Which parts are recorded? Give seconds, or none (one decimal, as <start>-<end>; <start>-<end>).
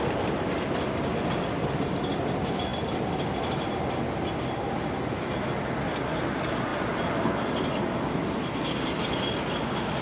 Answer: 0.0-10.0